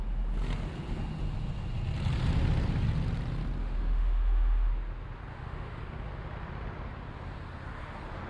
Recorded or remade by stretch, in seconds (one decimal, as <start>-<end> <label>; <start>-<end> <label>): 0.0-3.6 recorded; 3.6-4.7 remade; 4.7-5.3 recorded; 5.3-5.8 remade; 5.8-8.3 recorded